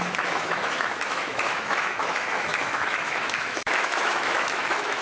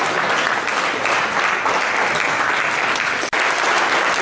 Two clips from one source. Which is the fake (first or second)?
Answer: first